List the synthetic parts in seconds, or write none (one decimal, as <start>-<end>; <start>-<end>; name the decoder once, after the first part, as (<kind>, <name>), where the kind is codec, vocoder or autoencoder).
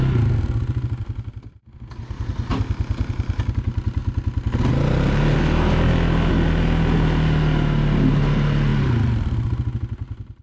none